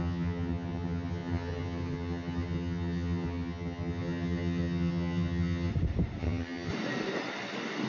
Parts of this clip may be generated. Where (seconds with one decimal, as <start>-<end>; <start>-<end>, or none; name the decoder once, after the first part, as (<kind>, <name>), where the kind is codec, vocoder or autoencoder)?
0.0-5.7 (vocoder, HiFi-GAN); 6.2-6.7